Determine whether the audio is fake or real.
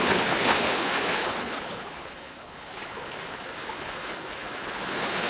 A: fake